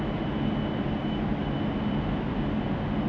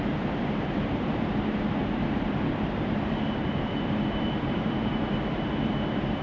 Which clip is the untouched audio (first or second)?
first